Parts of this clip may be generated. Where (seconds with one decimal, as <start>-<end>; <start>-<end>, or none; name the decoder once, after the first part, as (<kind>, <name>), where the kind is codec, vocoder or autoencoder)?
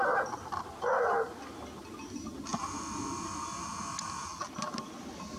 none